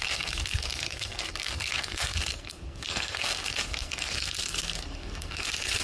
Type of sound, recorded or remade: remade